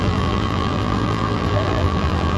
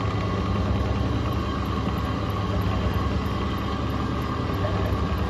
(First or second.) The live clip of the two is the second